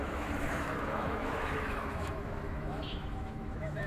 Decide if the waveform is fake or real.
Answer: fake